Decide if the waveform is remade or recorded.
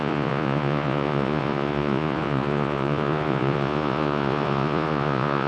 remade